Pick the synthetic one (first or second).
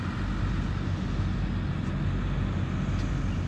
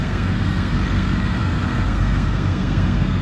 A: second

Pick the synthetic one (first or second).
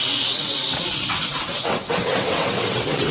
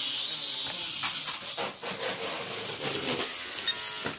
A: first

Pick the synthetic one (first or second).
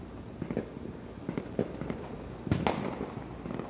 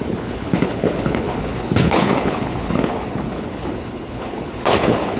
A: second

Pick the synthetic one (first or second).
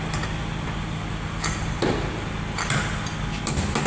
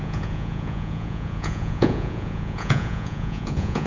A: second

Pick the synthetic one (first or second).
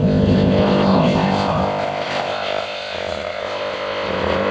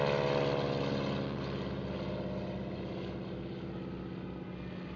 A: first